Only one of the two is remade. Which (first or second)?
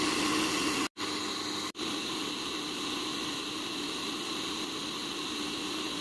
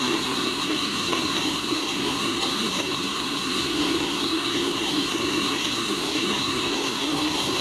second